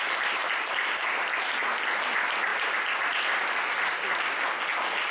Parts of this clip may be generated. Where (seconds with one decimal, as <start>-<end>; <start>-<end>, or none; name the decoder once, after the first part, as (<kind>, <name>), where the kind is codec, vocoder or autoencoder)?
none